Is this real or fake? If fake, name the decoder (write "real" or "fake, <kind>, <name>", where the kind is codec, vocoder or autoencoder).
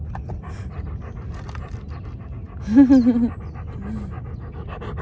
real